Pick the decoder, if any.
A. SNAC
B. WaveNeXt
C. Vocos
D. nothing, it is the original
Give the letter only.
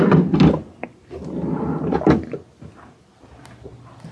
D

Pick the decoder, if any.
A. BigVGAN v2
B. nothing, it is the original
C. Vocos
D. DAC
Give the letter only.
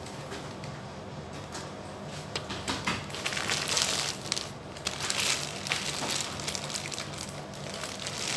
B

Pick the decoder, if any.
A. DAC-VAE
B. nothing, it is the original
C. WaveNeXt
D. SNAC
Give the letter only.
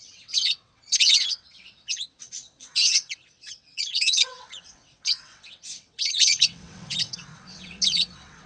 C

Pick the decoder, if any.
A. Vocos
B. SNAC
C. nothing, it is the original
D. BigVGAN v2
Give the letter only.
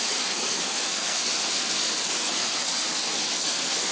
B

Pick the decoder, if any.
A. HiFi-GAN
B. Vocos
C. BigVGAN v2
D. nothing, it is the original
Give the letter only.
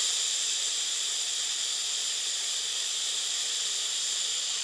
C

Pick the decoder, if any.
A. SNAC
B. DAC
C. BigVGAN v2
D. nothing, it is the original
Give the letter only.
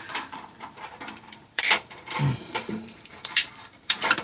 C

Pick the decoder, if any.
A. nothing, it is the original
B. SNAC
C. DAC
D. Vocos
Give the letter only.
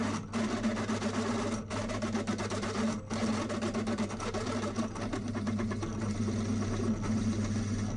A